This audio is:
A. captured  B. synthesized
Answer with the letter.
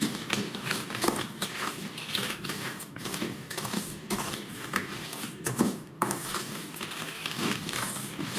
B